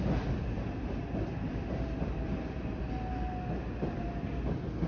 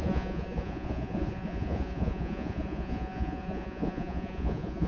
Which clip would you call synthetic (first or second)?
second